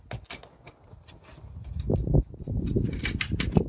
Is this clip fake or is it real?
real